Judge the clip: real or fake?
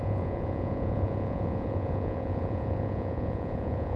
fake